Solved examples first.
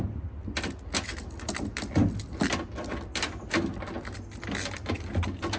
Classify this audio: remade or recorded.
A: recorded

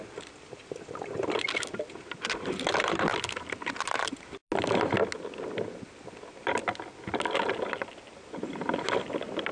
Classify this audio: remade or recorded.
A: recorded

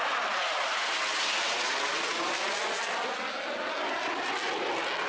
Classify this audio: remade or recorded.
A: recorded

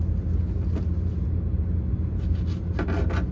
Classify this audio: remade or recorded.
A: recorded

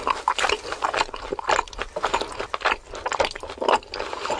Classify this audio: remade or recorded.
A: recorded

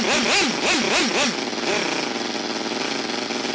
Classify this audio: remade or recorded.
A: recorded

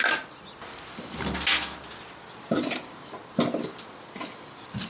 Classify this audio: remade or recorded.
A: recorded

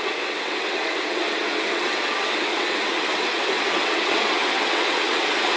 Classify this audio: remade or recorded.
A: remade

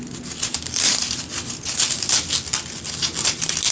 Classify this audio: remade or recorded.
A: recorded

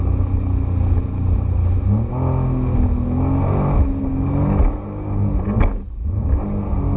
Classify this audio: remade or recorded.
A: recorded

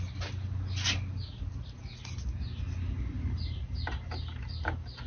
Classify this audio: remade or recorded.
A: recorded